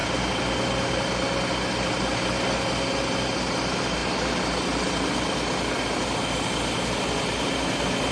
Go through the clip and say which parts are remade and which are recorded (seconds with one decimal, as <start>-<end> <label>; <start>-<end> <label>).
0.0-8.1 recorded